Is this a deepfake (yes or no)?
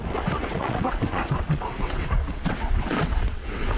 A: yes